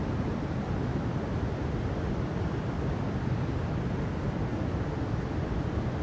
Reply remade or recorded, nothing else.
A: recorded